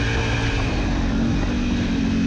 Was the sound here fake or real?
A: real